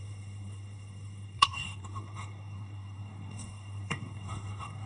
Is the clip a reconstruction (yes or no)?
yes